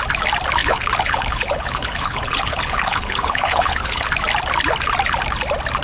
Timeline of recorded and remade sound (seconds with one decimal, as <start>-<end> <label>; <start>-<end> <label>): 0.0-0.6 recorded; 0.6-4.1 remade; 4.1-5.8 recorded